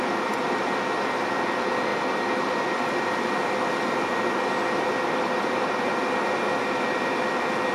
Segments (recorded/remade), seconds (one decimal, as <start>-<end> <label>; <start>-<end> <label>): 0.0-7.7 recorded